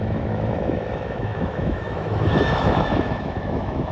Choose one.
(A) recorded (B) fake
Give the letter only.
B